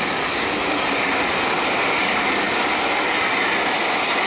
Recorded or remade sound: recorded